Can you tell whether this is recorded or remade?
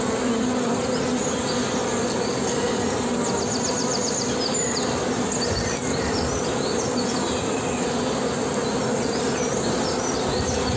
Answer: recorded